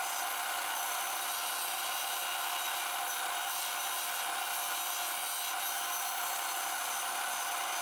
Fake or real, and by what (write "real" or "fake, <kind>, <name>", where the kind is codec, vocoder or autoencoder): real